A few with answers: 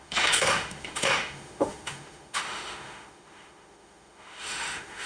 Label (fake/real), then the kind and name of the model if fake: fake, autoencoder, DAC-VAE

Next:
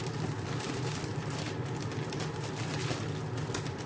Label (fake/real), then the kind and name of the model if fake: real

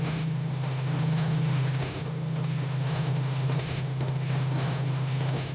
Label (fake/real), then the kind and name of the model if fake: fake, autoencoder, DAC-VAE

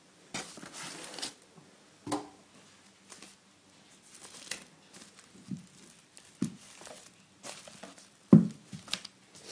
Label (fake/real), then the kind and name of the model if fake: real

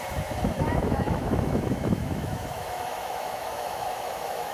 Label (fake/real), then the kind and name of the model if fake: fake, autoencoder, DAC-VAE